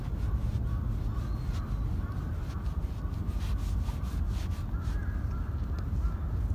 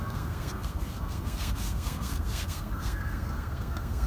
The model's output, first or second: second